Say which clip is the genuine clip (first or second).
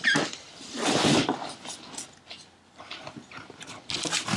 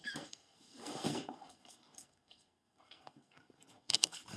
first